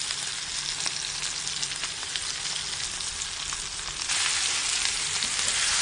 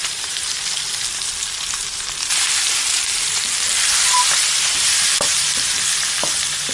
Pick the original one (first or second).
first